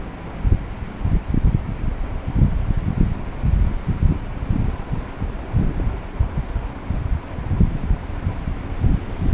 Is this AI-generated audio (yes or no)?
no